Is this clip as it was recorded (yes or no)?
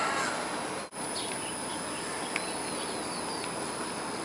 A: yes